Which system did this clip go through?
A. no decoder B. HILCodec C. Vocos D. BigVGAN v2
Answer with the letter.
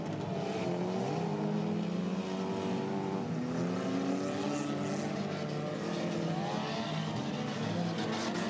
A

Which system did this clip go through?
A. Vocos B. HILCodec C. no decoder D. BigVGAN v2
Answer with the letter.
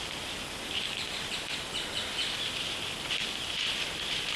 D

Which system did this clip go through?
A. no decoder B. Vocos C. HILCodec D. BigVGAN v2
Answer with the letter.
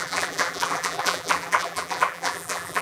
D